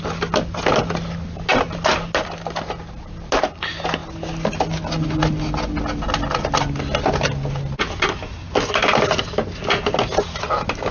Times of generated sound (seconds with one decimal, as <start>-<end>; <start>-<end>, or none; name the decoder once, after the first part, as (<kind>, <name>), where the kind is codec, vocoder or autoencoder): none